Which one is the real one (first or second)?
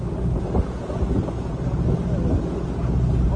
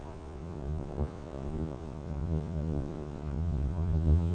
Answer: first